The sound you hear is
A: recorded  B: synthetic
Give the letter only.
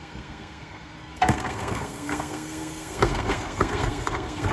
B